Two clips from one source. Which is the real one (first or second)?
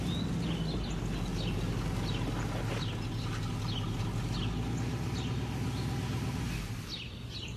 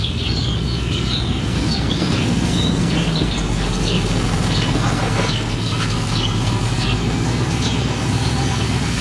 first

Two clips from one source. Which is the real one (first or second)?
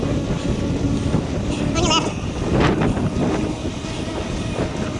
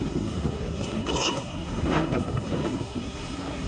first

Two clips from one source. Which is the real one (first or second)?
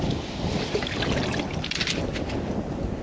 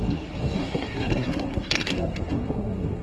first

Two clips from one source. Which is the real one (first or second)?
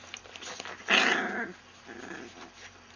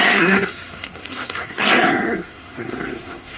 first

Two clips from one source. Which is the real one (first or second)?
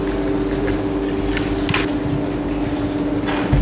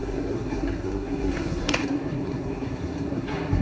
first